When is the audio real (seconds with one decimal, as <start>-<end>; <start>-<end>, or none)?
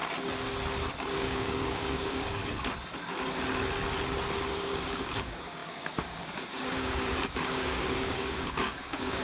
0.0-1.1; 2.4-4.5